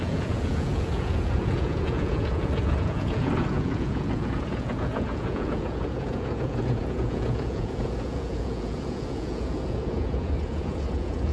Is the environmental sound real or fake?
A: fake